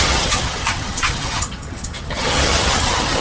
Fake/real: fake